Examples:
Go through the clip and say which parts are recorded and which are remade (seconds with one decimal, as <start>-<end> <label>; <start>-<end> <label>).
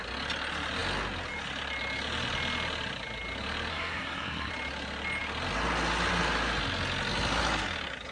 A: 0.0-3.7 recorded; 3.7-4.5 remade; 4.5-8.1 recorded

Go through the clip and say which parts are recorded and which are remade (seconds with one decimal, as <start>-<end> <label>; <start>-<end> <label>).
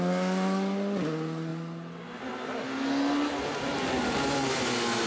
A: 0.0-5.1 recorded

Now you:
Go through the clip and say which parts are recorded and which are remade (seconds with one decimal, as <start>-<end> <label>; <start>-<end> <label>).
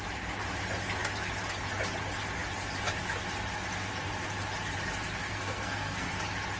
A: 0.0-5.2 recorded; 5.2-6.1 remade; 6.1-6.6 recorded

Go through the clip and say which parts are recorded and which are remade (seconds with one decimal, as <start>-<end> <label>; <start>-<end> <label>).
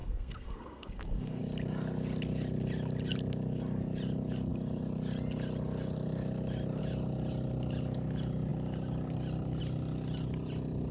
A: 0.0-1.4 remade; 1.4-10.9 recorded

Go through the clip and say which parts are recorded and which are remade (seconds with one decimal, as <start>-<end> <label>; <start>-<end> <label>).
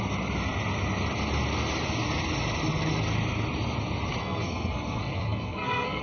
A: 0.0-4.2 recorded; 4.2-6.0 remade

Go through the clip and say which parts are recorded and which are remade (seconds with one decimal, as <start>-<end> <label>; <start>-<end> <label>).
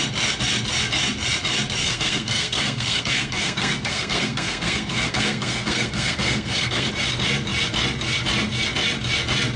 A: 0.0-1.8 recorded; 1.8-6.9 remade; 6.9-9.6 recorded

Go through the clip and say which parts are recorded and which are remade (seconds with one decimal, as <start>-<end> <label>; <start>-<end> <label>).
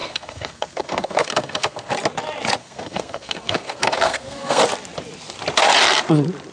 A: 0.0-1.9 remade; 1.9-2.6 recorded; 2.6-4.6 remade; 4.6-6.5 recorded